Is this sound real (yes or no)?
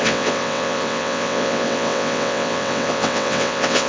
no